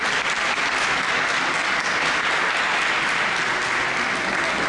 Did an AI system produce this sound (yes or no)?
no